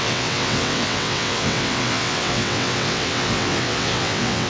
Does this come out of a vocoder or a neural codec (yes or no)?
yes